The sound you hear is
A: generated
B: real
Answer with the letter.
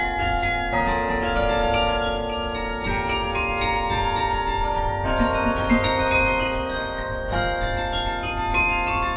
B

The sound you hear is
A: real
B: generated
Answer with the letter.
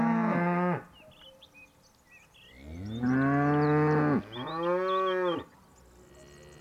A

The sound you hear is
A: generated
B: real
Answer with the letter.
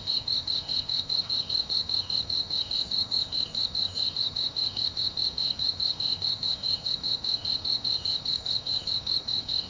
A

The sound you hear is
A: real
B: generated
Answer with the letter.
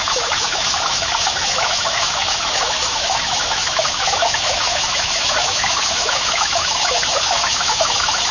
B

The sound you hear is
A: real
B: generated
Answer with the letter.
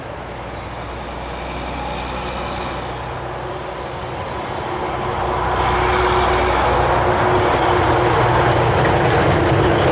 A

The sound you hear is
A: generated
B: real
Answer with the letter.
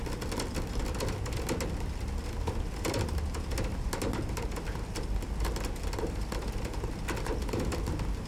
B